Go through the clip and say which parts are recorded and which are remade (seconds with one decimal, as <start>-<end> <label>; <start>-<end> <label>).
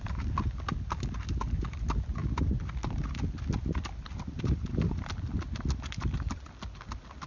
0.0-7.3 recorded